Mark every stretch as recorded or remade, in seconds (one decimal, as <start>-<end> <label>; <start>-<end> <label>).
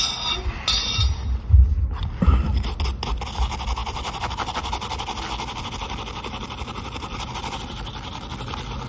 0.0-8.9 recorded